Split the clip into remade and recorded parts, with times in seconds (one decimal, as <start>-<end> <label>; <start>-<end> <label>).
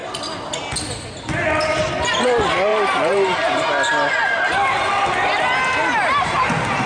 0.0-2.7 recorded; 2.7-3.6 remade; 3.6-5.8 recorded; 5.8-6.9 remade